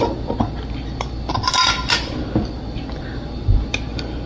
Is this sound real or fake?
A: real